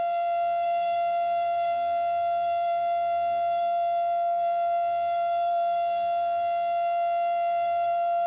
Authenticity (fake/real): fake